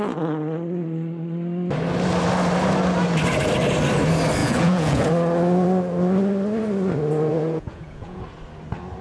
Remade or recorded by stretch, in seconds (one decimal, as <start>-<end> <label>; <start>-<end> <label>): 0.0-4.4 recorded; 4.4-5.1 remade; 5.1-7.3 recorded; 7.3-8.2 remade; 8.2-9.0 recorded